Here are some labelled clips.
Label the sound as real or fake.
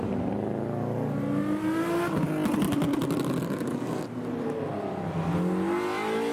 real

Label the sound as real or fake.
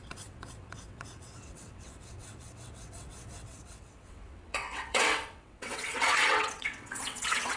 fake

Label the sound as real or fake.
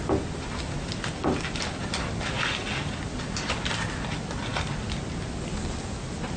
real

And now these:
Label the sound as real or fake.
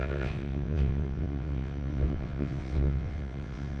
fake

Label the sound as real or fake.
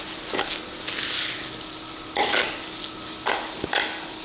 real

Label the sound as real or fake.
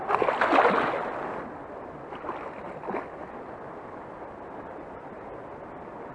real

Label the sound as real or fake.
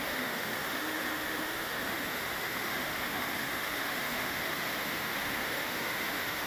fake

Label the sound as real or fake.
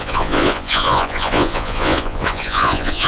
fake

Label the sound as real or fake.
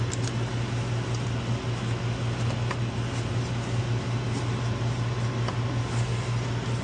real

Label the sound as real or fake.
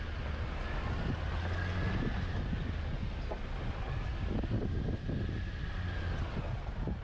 real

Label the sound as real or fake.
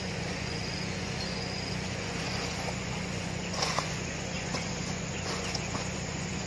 fake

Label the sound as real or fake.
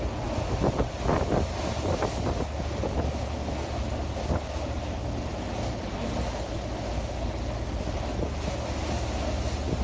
real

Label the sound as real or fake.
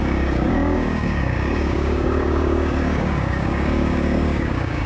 fake